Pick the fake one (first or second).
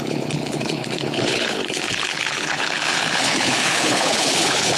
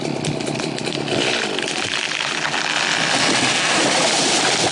first